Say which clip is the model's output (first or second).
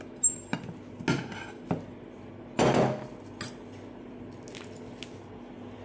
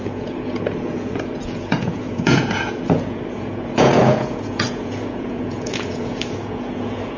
second